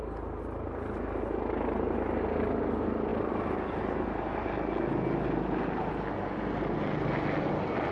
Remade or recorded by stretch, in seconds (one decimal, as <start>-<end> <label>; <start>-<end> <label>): 0.0-7.9 recorded